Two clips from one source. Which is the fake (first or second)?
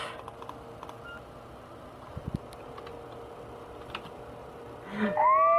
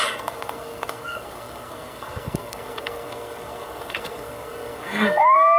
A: second